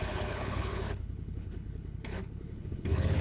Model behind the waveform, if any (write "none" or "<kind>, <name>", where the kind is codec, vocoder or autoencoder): codec, HILCodec